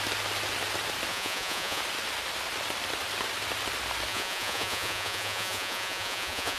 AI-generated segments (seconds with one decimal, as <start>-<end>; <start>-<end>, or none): 1.1-1.8; 4.1-6.6